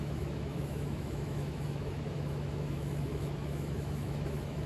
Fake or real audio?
fake